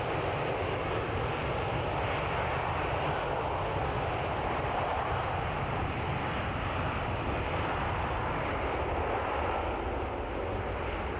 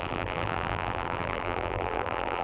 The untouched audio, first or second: first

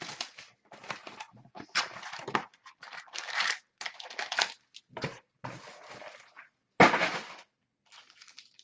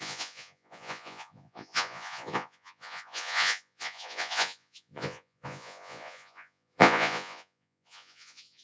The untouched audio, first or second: first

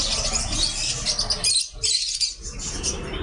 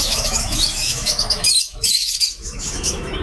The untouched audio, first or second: first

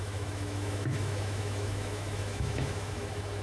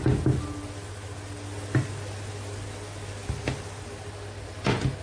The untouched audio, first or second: second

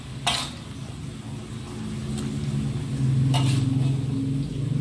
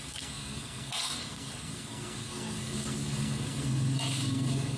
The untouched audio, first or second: first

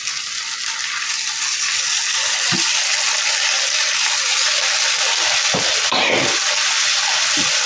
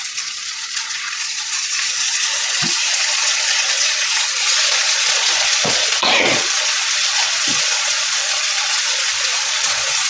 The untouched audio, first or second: first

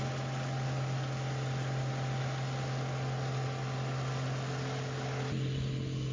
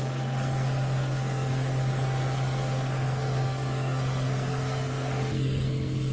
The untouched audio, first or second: first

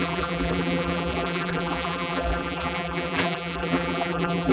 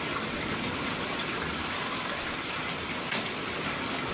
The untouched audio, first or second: second